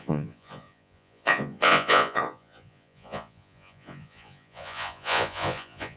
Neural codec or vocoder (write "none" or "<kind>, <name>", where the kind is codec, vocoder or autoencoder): vocoder, Vocos